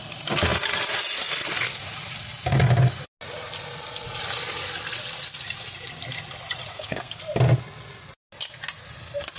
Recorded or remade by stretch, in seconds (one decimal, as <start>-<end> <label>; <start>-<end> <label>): 0.0-6.7 recorded; 6.7-7.2 remade; 7.2-9.4 recorded